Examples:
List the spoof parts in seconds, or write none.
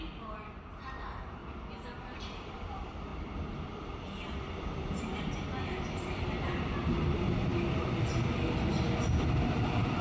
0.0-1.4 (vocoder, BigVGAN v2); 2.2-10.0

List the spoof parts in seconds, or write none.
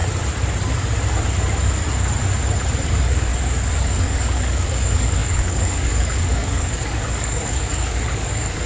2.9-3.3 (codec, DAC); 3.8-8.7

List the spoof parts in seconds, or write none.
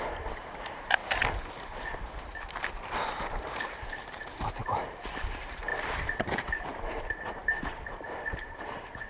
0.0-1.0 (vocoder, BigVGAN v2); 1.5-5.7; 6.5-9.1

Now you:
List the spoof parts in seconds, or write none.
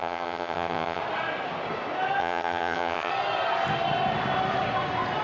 0.0-1.0 (vocoder, HiFi-GAN); 2.2-3.1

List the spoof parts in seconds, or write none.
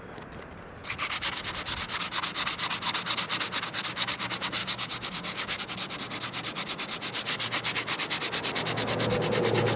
4.6-5.6 (codec, DAC)